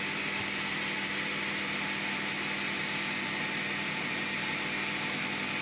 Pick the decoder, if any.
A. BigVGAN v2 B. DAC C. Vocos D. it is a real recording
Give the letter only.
D